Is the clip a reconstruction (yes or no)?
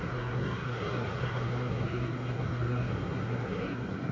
yes